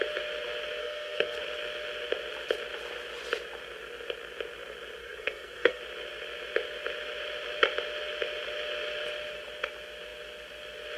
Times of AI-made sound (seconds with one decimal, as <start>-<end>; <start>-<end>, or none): 0.8-1.4; 5.0-5.8